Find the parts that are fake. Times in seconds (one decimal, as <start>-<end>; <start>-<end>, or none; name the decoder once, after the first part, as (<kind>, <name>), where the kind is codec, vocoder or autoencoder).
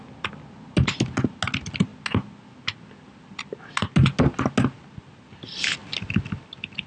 none